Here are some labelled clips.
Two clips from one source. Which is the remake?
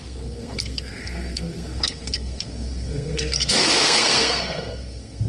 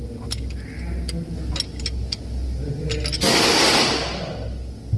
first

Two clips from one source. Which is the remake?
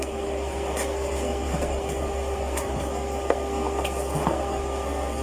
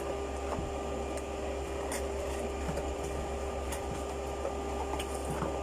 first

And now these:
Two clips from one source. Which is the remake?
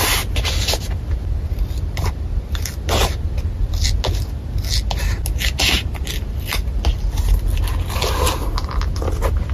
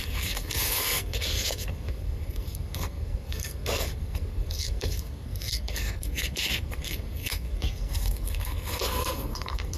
second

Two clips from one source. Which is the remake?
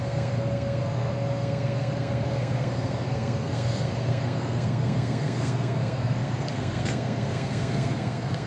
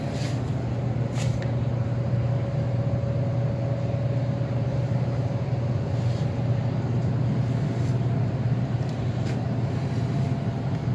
first